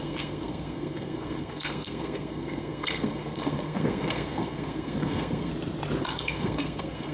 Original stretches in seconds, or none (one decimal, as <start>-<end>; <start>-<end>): 5.5-6.0